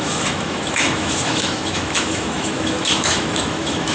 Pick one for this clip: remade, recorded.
remade